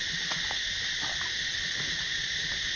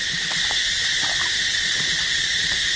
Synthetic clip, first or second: second